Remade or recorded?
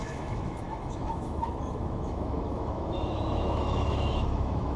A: remade